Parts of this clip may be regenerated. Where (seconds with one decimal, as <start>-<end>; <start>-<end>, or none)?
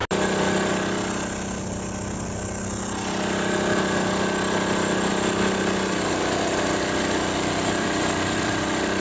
none